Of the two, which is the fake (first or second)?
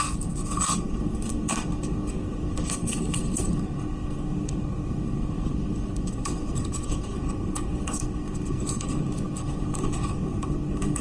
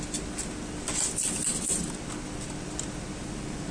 first